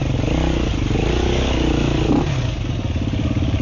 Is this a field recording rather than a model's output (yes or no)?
yes